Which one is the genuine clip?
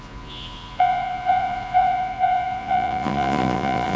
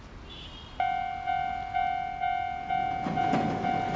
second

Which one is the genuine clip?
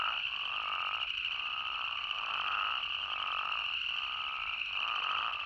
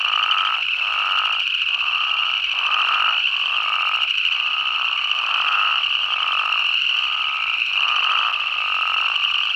second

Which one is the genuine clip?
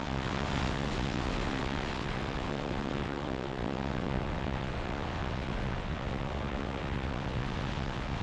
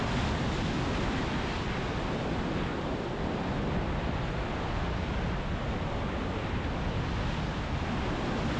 second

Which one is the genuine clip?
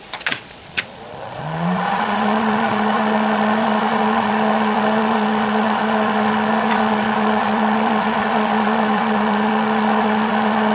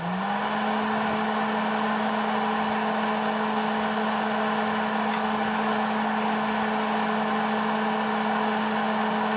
second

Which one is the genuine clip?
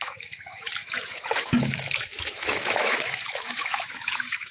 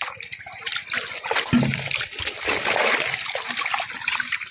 second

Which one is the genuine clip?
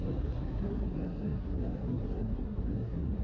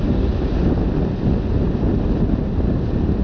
second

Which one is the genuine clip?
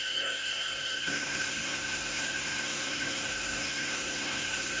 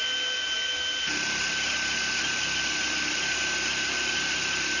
second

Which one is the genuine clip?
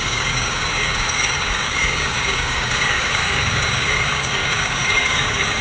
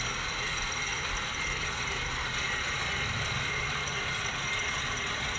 second